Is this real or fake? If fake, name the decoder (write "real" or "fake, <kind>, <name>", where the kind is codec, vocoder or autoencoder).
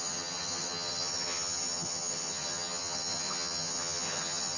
fake, vocoder, HiFi-GAN